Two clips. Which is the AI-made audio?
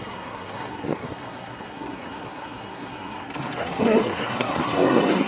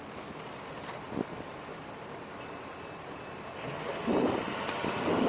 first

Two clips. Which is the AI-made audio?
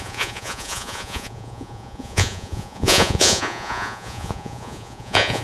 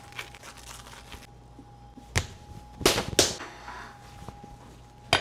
first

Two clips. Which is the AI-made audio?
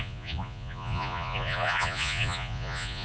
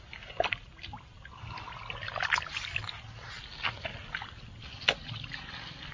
first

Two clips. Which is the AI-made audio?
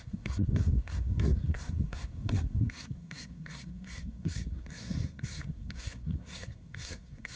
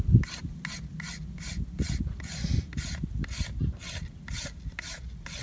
first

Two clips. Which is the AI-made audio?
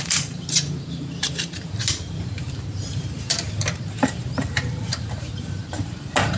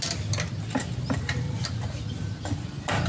first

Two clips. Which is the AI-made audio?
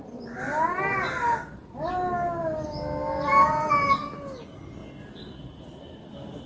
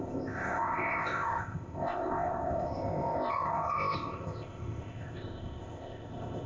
second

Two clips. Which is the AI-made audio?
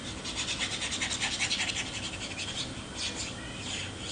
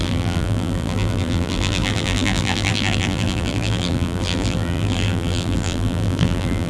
second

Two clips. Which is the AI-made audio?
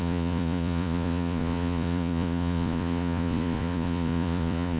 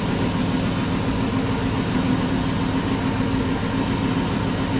first